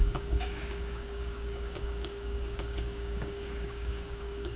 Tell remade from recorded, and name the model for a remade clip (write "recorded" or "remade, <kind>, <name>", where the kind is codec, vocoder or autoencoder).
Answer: remade, codec, DAC